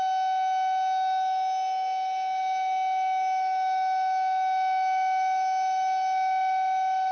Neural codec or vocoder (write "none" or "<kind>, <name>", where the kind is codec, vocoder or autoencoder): none